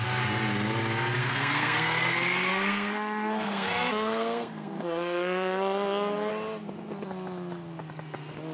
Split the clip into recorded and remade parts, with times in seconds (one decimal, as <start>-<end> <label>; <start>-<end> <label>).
0.0-1.2 recorded; 1.2-6.3 remade; 6.3-8.5 recorded